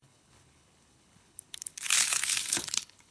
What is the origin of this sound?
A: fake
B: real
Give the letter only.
A